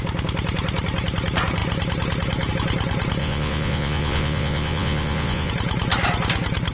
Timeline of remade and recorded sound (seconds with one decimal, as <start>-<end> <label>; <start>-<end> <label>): 0.0-3.2 recorded; 3.2-5.5 remade; 5.5-6.7 recorded